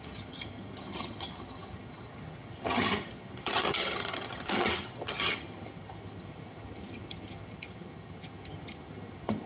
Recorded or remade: remade